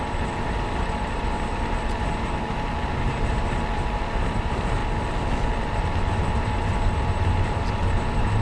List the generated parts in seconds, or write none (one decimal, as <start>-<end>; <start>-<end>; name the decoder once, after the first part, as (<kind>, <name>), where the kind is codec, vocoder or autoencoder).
0.0-4.8 (vocoder, BigVGAN v2); 5.7-8.4